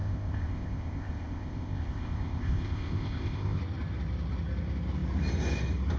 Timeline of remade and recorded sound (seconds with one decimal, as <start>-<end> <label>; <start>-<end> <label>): 0.0-3.6 remade; 3.6-6.0 recorded